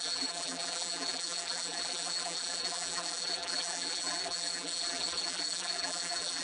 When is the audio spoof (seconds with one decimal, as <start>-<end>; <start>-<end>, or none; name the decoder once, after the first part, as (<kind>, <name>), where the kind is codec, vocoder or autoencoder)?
0.0-6.4 (vocoder, BigVGAN v2)